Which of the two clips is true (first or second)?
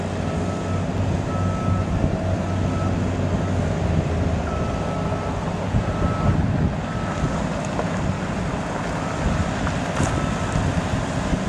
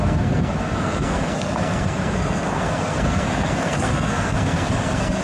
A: first